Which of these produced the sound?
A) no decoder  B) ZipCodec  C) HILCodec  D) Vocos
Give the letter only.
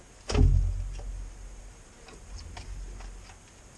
A